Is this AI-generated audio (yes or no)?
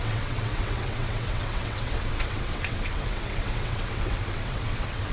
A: yes